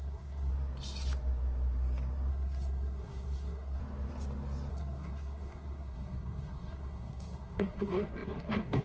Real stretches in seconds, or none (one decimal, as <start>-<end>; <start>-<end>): 0.5-2.3; 3.8-4.7